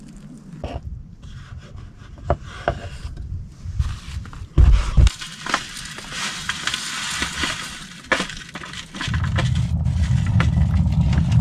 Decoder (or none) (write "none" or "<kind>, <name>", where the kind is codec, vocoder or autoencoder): none